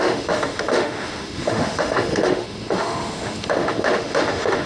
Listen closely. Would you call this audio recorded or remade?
remade